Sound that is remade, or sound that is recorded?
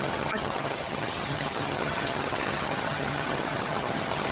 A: remade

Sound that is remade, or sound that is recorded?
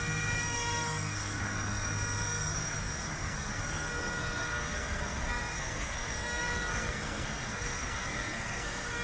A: remade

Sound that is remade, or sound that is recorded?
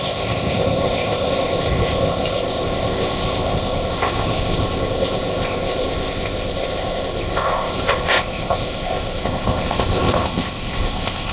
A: remade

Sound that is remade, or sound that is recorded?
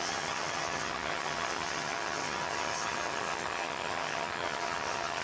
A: remade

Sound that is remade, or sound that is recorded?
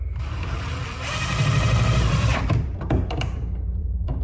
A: remade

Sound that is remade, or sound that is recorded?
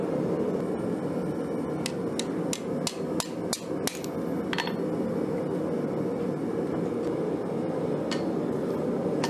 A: recorded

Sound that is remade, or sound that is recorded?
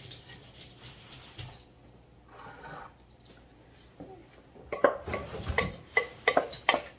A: remade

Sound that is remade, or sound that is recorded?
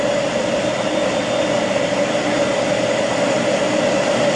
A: recorded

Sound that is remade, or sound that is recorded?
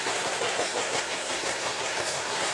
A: remade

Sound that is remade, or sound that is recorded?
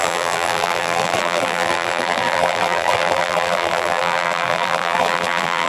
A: remade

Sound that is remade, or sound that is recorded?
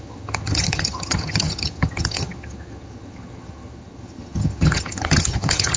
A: remade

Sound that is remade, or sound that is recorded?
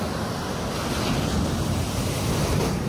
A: recorded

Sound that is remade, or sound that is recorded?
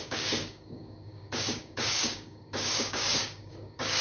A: remade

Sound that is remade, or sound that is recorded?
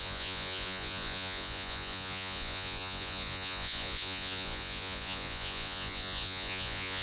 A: remade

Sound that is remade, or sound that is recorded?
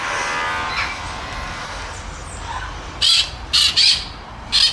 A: recorded